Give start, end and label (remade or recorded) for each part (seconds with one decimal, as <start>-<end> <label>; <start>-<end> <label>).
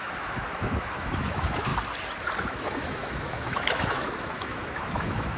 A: 0.0-1.7 remade; 1.7-2.4 recorded; 2.4-5.4 remade